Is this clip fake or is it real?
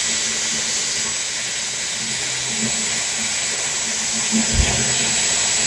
real